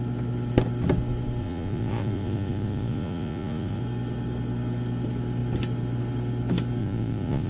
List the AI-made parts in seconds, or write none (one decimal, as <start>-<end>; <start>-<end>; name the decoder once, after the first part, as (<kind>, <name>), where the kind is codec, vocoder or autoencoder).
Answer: 1.4-3.8 (vocoder, Vocos); 6.8-7.5